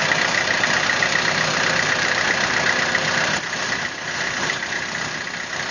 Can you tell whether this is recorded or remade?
remade